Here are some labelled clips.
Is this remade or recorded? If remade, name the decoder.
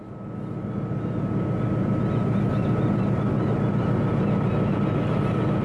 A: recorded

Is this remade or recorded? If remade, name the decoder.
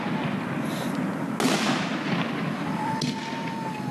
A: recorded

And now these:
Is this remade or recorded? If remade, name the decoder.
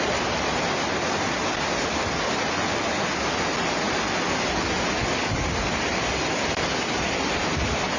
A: recorded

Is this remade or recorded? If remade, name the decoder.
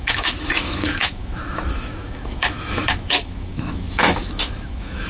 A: remade, autoencoder, DAC-VAE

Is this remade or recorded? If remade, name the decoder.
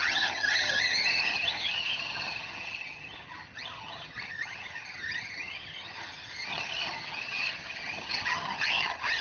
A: remade, vocoder, HiFi-GAN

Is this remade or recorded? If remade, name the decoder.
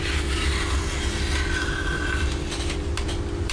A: recorded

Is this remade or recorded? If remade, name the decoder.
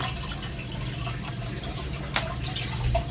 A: recorded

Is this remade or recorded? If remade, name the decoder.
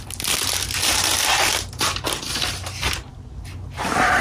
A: recorded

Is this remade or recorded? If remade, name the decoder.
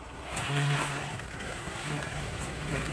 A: remade, codec, SNAC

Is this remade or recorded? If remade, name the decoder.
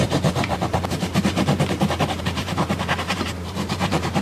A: remade, vocoder, BigVGAN v2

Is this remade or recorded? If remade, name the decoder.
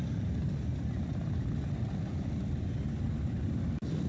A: recorded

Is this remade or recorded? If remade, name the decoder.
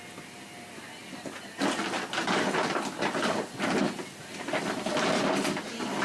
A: recorded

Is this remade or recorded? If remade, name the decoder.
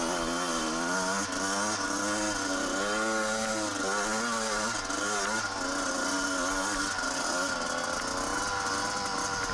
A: recorded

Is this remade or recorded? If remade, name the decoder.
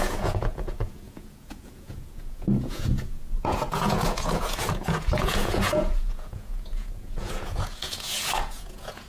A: remade, vocoder, Vocos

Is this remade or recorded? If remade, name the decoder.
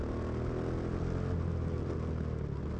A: recorded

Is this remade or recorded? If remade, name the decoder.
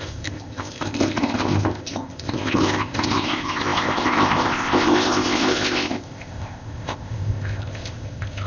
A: remade, codec, ZipCodec